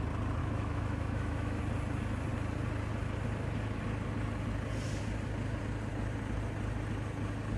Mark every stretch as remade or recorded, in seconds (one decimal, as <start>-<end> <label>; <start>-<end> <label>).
0.0-0.4 recorded; 0.4-1.6 remade; 1.6-7.6 recorded